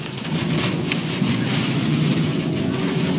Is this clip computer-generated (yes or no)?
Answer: yes